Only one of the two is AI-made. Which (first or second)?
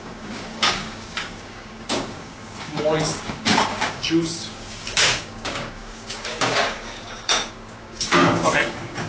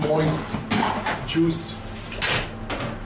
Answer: first